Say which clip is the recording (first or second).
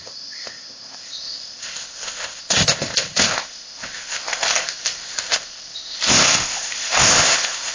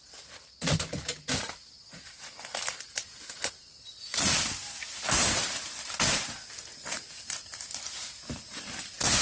second